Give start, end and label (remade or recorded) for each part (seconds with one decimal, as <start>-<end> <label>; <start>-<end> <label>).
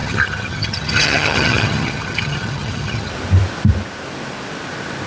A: 0.0-3.1 remade; 3.1-5.1 recorded